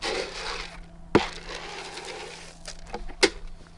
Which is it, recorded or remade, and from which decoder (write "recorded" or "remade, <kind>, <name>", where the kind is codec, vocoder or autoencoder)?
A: recorded